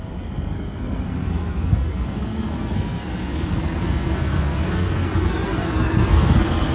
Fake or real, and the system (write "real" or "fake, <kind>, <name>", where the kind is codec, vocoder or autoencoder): fake, codec, SNAC